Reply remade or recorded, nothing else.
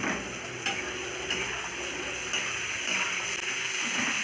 recorded